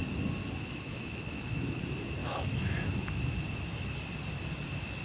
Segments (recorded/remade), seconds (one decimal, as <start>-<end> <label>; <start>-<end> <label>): 0.0-0.4 recorded; 0.4-1.8 remade; 1.8-2.2 recorded; 2.2-3.2 remade; 3.2-5.0 recorded